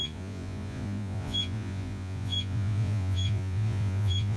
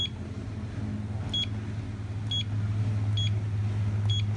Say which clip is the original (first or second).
second